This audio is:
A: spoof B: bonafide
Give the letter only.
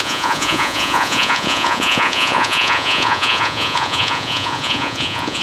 A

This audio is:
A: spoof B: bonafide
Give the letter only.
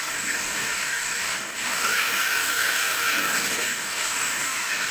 A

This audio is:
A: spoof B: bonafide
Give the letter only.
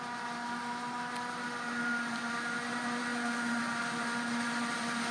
B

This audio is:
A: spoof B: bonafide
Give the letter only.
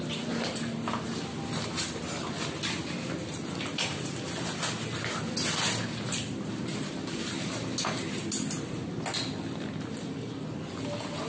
B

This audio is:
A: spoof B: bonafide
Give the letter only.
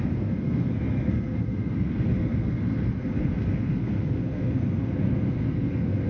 A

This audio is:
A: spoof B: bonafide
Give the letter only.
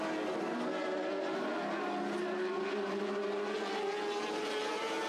B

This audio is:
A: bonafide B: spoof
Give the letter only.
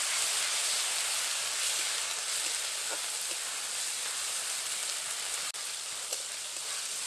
A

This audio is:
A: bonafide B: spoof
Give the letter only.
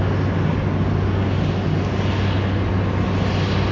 A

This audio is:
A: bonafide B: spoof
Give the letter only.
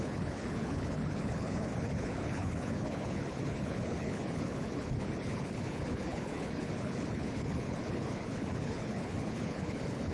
B